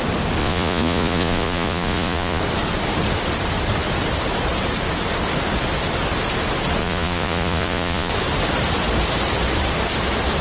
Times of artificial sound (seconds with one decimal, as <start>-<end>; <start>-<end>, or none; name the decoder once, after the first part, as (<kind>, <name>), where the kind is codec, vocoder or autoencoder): 0.4-2.4 (vocoder, Vocos); 6.8-8.1